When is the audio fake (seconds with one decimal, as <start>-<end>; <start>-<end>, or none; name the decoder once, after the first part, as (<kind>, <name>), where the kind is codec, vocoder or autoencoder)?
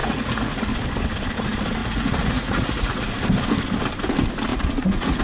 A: 0.0-0.6 (vocoder, Vocos); 1.8-3.2; 4.5-5.2